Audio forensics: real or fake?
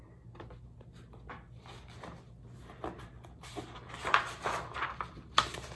real